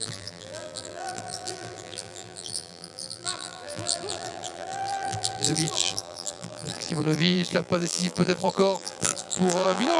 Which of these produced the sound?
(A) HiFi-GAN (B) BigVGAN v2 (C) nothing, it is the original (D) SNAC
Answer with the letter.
B